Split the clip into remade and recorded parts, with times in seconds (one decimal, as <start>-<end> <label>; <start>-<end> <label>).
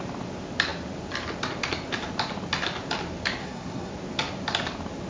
0.0-3.4 recorded; 3.4-3.9 remade; 3.9-5.1 recorded